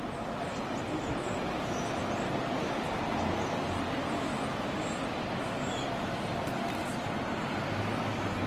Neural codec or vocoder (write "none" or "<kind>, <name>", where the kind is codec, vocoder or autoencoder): none